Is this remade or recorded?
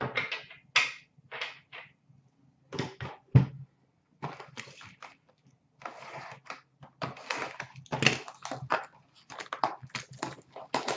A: recorded